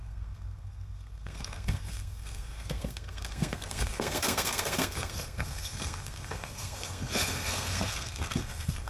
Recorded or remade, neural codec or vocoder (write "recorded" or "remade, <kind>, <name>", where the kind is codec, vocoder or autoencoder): remade, codec, SNAC